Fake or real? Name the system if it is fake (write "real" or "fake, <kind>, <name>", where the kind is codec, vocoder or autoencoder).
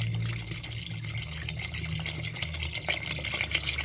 real